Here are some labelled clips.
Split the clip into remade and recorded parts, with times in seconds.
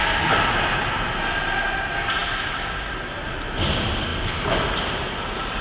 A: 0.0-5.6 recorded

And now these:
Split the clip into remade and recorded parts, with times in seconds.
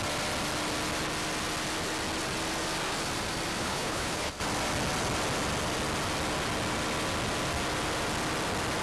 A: 0.0-3.6 recorded; 3.6-4.3 remade; 4.3-8.8 recorded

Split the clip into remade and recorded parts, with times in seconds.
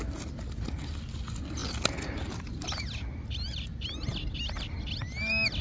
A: 0.0-5.6 recorded